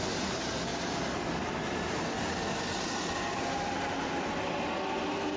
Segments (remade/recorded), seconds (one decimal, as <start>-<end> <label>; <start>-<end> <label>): 0.0-5.4 recorded